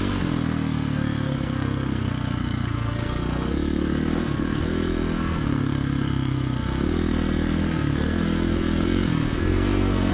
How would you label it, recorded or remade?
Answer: remade